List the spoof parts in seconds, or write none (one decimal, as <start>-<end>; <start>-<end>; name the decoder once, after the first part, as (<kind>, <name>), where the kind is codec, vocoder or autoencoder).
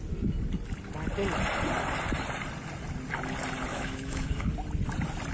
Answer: 3.7-4.5 (autoencoder, DAC-VAE)